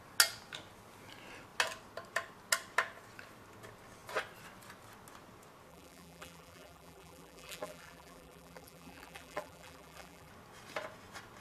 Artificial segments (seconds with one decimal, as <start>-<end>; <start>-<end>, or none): 5.7-10.3